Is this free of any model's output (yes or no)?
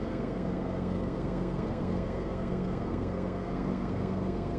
no